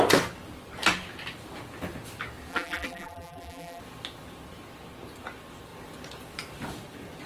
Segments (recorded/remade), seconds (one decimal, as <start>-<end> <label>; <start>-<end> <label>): 0.0-2.5 recorded; 2.5-3.8 remade; 3.8-7.3 recorded